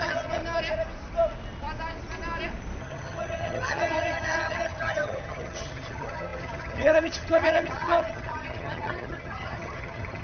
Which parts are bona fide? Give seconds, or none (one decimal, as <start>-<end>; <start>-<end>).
0.4-2.8

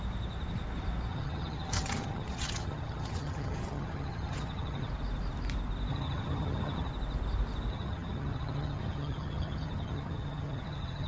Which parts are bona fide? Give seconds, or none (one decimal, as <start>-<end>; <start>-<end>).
0.0-1.1; 4.9-5.9; 6.9-7.7